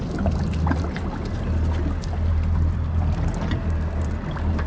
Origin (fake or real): real